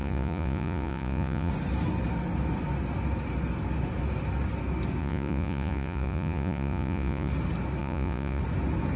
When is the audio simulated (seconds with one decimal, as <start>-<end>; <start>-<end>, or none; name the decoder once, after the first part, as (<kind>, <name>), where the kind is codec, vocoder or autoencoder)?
0.0-1.5 (vocoder, Vocos); 5.0-7.3; 7.8-8.4